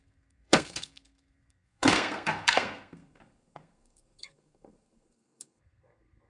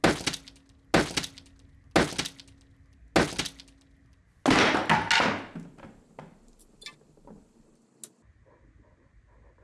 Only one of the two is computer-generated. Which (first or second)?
first